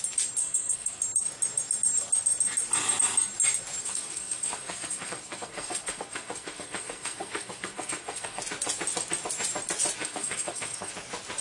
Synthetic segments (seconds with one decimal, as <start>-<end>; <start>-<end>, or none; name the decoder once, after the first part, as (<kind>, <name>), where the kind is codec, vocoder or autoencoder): 0.4-1.0 (codec, SNAC); 3.8-8.4; 10.0-10.9